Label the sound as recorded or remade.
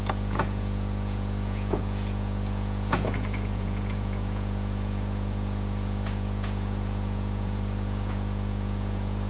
remade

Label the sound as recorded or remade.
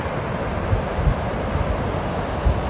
recorded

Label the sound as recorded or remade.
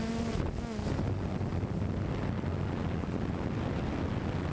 recorded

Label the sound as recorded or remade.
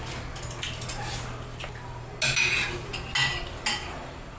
recorded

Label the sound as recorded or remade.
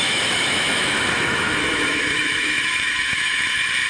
remade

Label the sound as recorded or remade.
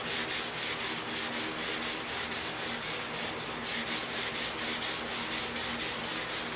recorded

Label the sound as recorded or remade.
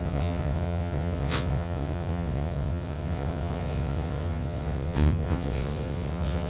remade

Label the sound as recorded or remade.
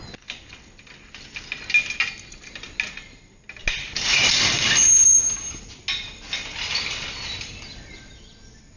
recorded